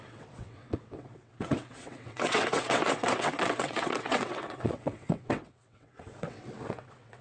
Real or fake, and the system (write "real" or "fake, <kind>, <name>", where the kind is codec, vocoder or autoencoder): fake, vocoder, WaveNeXt